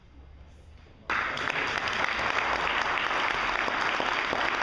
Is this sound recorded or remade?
recorded